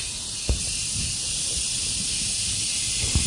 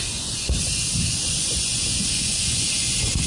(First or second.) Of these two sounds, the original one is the first